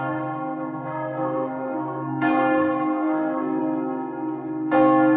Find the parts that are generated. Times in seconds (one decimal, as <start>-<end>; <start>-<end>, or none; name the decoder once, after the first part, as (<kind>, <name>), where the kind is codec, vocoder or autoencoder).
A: 0.0-3.6 (codec, SNAC)